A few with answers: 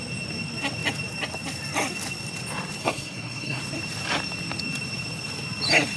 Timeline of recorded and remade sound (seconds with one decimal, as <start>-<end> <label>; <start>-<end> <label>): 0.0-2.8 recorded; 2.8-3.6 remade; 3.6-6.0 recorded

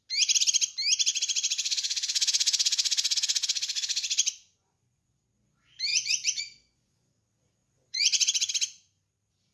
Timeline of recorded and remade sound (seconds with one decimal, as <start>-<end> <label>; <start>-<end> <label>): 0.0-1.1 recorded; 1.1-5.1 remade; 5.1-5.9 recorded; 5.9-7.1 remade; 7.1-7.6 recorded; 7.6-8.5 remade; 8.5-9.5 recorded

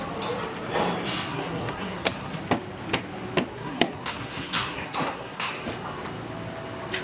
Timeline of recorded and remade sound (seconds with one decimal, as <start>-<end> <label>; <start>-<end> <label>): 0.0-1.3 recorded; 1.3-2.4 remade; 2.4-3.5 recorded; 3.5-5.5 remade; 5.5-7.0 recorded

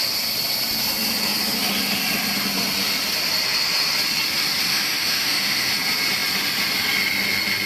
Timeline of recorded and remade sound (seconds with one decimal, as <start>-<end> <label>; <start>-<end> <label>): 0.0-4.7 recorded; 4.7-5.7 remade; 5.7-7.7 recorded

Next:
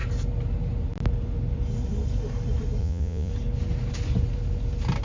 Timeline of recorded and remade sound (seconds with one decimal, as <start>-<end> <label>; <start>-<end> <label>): 0.0-2.8 recorded; 2.8-3.3 remade; 3.3-5.0 recorded

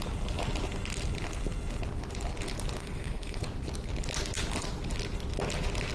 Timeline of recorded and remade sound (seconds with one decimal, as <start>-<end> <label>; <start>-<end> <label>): 0.0-2.8 recorded; 2.8-3.4 remade; 3.4-5.9 recorded

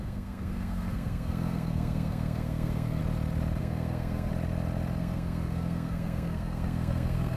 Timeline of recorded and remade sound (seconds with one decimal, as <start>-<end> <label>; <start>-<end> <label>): 0.0-3.0 remade; 3.0-3.6 recorded; 3.6-4.3 remade; 4.3-5.0 recorded; 5.0-7.4 remade

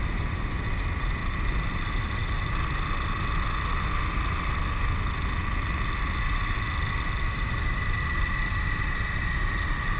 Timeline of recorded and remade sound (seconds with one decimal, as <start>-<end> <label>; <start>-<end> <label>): 0.0-10.0 recorded